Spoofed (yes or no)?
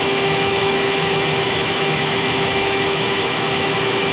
yes